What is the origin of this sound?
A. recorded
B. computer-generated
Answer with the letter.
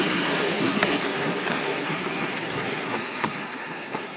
B